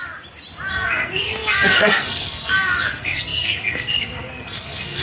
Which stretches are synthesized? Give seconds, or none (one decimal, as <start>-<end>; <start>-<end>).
0.7-5.0